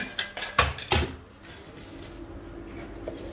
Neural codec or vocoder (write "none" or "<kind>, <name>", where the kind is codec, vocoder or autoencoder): none